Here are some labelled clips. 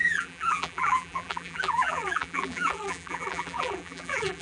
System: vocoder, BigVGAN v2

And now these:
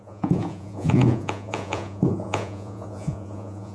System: vocoder, Vocos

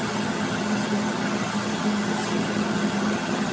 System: vocoder, HiFi-GAN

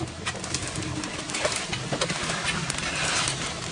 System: none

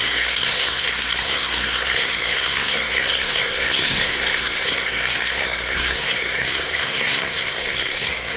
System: codec, SNAC